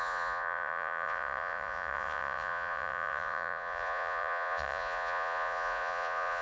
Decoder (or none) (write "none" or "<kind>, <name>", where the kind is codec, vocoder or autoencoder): vocoder, Vocos